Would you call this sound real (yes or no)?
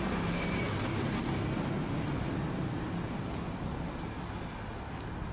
yes